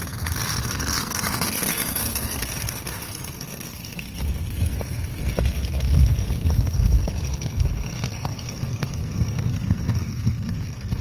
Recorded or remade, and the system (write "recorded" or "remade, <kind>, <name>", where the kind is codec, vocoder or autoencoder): remade, codec, SNAC